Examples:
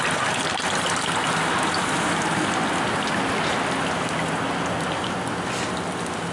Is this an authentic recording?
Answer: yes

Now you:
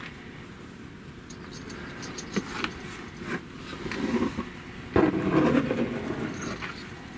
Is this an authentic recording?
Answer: yes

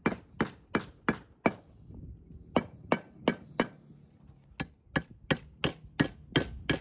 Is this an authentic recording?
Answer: yes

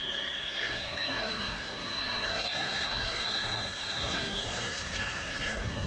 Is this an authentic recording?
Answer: no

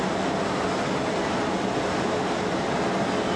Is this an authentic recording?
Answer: yes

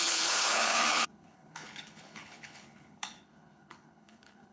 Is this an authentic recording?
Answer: no